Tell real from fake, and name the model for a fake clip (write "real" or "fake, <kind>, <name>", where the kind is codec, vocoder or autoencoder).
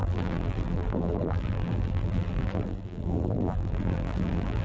fake, vocoder, BigVGAN v2